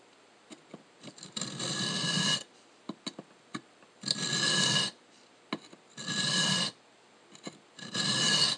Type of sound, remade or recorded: recorded